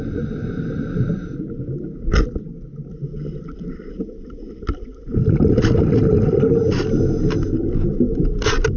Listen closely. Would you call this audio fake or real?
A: real